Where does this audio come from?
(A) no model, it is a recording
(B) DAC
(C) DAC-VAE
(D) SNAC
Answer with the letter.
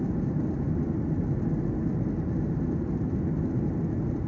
A